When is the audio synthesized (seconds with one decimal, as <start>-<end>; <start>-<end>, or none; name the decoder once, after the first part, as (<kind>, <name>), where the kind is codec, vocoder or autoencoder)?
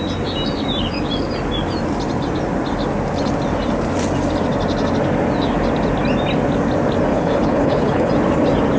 7.1-8.1 (codec, HILCodec)